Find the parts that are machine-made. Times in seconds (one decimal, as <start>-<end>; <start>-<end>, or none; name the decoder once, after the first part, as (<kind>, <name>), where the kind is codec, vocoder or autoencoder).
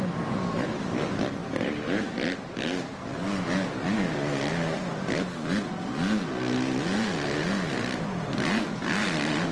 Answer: 1.4-3.0 (vocoder, BigVGAN v2)